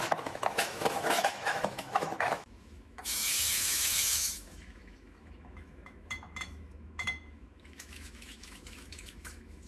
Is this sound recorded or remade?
remade